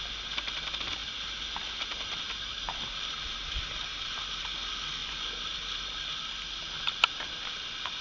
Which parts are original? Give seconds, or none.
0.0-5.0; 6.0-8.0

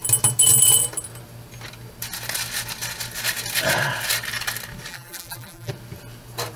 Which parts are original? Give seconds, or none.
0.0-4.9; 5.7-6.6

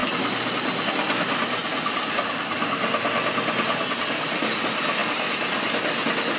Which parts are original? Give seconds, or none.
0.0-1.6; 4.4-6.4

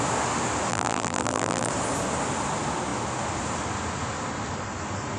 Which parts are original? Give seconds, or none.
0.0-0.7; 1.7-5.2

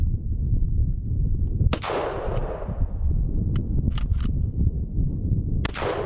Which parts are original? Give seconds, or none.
0.0-0.8; 1.6-2.4; 3.3-6.1

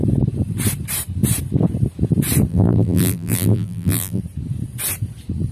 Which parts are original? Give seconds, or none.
0.0-2.5; 4.2-5.5

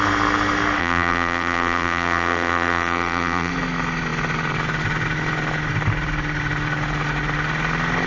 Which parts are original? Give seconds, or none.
0.0-0.8; 3.5-8.1